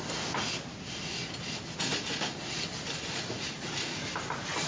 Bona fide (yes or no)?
yes